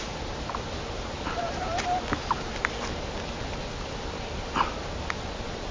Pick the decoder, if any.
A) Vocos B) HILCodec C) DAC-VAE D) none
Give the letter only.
D